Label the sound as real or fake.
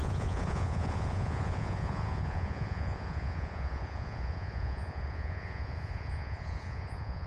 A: fake